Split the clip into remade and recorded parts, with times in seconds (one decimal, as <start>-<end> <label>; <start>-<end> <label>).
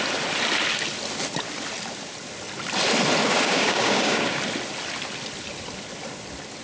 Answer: 0.0-3.2 recorded; 3.2-4.4 remade; 4.4-6.6 recorded